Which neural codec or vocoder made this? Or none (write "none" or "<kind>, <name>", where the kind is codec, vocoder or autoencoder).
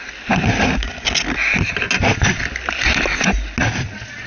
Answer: none